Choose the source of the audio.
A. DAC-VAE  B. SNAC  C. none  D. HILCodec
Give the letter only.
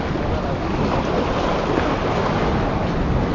C